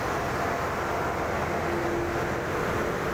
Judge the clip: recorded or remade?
recorded